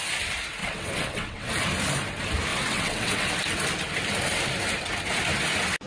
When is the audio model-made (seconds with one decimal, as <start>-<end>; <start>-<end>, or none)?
0.6-1.5; 2.5-3.3